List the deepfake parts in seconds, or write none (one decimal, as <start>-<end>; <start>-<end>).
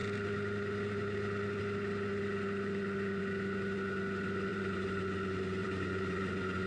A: 4.5-5.0; 5.6-6.3